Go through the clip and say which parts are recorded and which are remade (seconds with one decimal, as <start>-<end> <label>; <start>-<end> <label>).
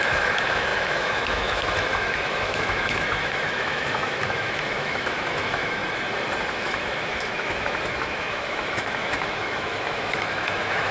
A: 0.0-5.8 remade; 5.8-6.5 recorded; 6.5-10.9 remade